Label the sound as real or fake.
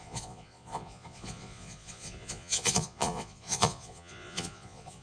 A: fake